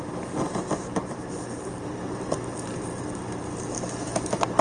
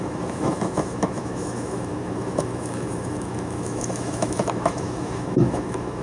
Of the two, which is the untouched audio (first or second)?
first